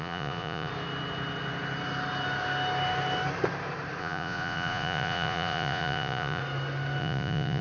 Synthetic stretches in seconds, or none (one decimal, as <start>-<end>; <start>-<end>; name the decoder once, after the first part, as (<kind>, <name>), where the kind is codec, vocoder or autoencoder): 0.0-0.7 (vocoder, Vocos); 4.0-6.4; 7.0-7.6